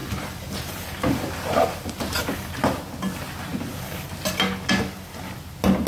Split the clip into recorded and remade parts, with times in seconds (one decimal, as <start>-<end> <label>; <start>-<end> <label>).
0.0-2.2 remade; 2.2-5.9 recorded